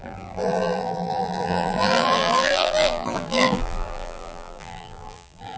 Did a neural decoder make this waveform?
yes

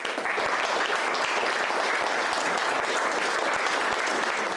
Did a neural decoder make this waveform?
no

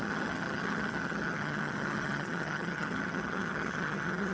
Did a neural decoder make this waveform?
yes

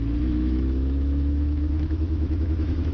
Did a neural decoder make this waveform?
yes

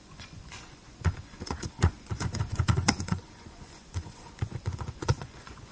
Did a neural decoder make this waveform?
yes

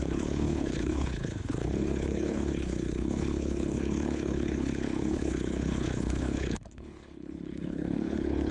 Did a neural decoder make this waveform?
yes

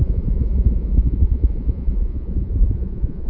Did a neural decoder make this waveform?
yes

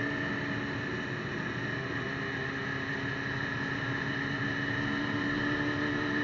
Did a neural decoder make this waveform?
no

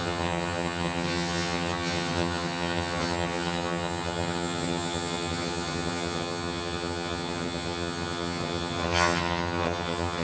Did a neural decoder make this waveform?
yes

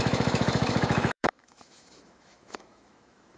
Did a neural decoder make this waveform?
yes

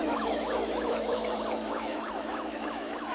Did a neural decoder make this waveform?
yes